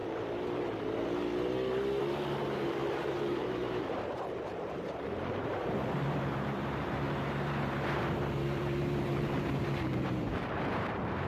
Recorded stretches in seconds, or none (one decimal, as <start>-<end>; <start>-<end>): 0.0-2.0